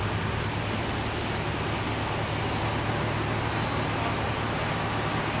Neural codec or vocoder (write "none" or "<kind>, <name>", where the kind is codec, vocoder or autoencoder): none